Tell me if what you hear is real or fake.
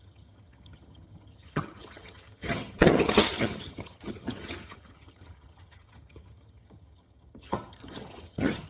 fake